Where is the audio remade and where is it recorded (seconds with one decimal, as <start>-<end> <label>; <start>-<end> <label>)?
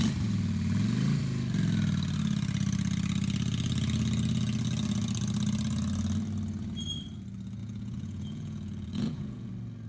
0.0-7.6 recorded; 7.6-9.5 remade; 9.5-9.9 recorded